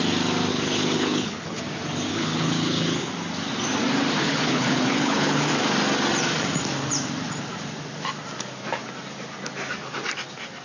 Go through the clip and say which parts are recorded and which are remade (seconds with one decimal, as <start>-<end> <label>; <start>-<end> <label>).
0.0-0.5 recorded; 0.5-1.6 remade; 1.6-2.1 recorded; 2.1-3.1 remade; 3.1-4.2 recorded; 4.2-5.5 remade; 5.5-10.6 recorded